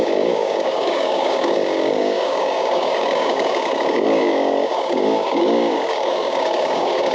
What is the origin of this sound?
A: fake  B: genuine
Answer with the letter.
A